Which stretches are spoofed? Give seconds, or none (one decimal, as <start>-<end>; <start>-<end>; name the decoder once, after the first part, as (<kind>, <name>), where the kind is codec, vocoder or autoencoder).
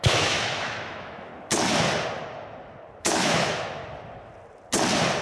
0.0-1.3 (autoencoder, DAC-VAE); 3.0-3.8